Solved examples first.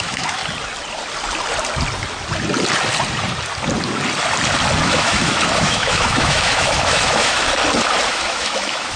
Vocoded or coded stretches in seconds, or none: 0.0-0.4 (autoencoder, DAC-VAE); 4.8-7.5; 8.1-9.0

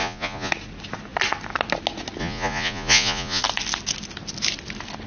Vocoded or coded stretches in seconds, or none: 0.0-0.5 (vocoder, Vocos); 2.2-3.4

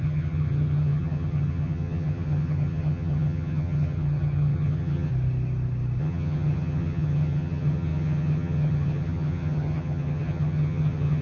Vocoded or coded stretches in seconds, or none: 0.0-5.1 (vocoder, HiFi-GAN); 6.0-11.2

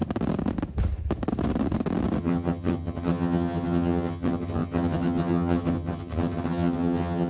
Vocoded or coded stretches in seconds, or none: 2.2-7.3 (vocoder, HiFi-GAN)

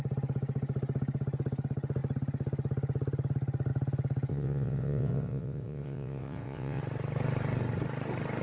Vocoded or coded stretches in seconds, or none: 4.3-6.8 (vocoder, WaveNeXt)

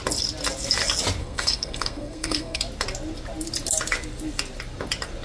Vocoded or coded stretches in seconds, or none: 1.2-2.6 (codec, SNAC)

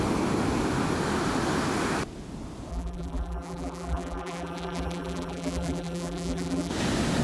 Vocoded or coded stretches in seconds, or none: 2.7-6.7 (vocoder, BigVGAN v2)

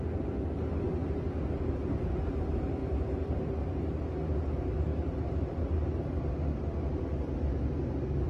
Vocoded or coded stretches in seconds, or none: 2.8-4.0 (vocoder, BigVGAN v2); 4.9-8.3